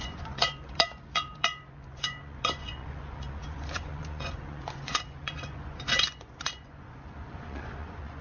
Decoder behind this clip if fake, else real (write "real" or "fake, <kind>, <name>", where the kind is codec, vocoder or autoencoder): fake, vocoder, Vocos